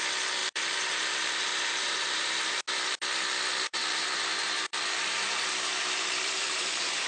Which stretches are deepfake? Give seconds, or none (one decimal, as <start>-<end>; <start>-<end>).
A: 0.4-2.5; 3.8-7.1